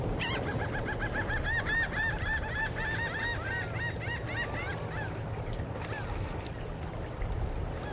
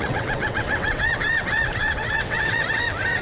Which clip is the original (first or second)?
first